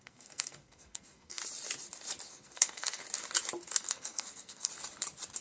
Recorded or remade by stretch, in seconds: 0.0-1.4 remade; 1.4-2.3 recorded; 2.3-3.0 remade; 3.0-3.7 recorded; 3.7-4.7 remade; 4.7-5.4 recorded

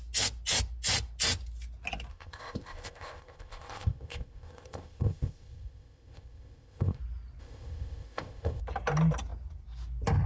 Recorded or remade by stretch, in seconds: 0.0-2.1 recorded; 2.1-7.0 remade; 7.0-7.4 recorded; 7.4-8.6 remade; 8.6-10.3 recorded